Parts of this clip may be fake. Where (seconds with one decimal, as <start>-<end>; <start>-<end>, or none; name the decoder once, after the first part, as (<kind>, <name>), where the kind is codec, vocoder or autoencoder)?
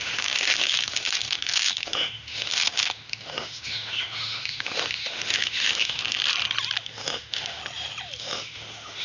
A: 0.0-6.2 (autoencoder, DAC-VAE); 6.8-7.6; 8.2-9.0